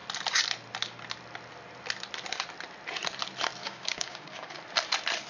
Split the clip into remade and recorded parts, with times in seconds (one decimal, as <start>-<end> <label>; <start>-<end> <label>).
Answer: 0.0-3.6 recorded; 3.6-4.6 remade; 4.6-5.3 recorded